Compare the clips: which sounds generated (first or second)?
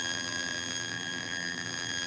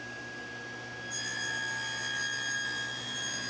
first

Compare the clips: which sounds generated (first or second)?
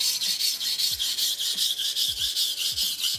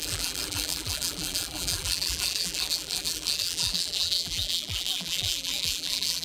second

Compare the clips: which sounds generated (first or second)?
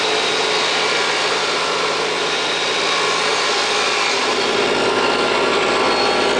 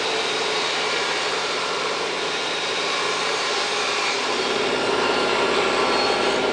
second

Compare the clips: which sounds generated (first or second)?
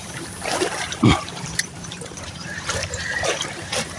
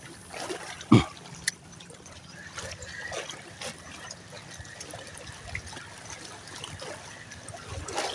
first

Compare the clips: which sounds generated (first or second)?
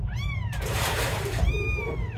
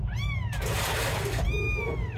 first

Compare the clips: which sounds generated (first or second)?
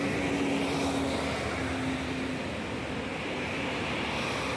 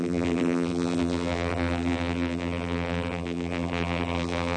second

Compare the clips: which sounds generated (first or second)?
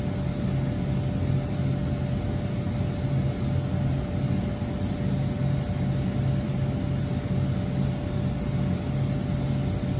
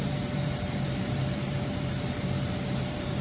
second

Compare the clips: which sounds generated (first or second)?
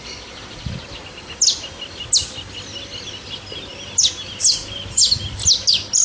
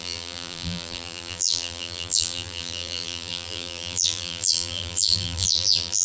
second